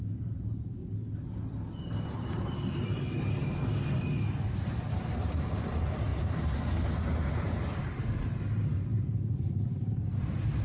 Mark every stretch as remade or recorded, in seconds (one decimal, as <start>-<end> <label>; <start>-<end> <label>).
0.0-0.8 remade; 0.8-4.4 recorded; 4.4-10.6 remade